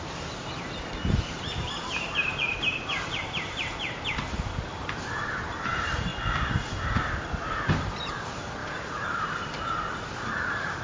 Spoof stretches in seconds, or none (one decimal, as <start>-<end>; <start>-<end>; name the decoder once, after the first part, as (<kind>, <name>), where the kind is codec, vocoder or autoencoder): 0.0-6.1 (vocoder, BigVGAN v2); 7.5-10.8